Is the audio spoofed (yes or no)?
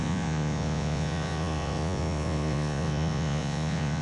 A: yes